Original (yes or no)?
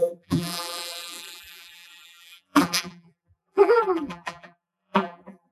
no